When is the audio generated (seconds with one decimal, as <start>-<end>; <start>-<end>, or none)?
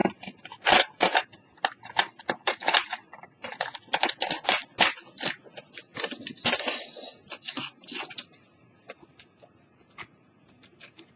0.0-2.6; 3.2-3.8; 8.1-11.2